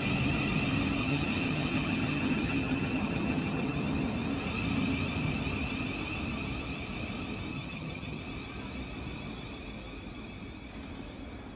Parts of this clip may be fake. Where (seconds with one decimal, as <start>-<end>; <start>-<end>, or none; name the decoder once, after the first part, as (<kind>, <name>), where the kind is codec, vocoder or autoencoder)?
1.0-3.8 (vocoder, HiFi-GAN); 7.5-8.2